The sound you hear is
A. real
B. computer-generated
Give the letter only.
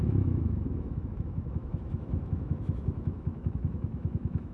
B